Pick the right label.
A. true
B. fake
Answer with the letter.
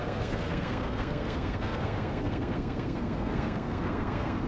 B